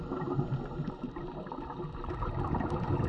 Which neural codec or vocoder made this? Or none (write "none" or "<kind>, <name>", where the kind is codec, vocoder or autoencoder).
none